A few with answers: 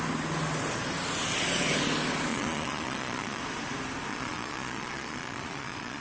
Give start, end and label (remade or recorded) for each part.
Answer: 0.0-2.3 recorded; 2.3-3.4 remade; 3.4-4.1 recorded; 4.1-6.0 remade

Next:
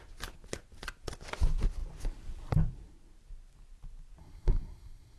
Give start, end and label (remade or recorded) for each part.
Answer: 0.0-4.2 recorded; 4.2-5.2 remade

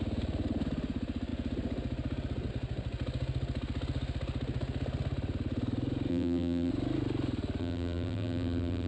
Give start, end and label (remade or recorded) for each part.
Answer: 0.0-6.1 recorded; 6.1-6.7 remade; 6.7-7.6 recorded; 7.6-8.9 remade